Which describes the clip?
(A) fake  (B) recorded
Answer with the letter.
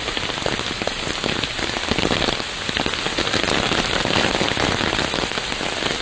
B